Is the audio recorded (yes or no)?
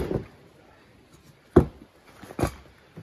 yes